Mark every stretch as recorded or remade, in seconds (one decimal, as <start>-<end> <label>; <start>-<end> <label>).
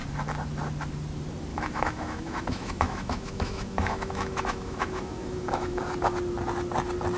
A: 0.0-1.5 recorded; 1.5-5.8 remade; 5.8-7.2 recorded